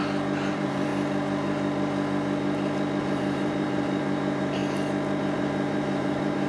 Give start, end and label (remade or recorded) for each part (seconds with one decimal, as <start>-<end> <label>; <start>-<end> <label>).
0.0-0.5 recorded; 0.5-0.9 remade; 0.9-3.0 recorded; 3.0-4.6 remade; 4.6-5.2 recorded; 5.2-6.5 remade